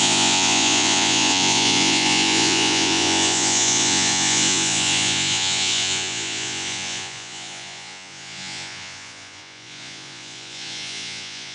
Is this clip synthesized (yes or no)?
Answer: yes